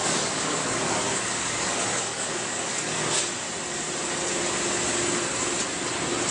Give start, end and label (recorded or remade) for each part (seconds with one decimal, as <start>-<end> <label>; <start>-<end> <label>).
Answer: 0.0-3.2 remade; 3.2-6.3 recorded